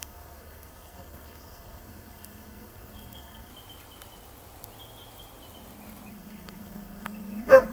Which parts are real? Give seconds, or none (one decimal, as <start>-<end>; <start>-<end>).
3.5-6.1